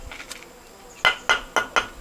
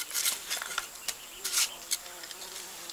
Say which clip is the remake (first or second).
second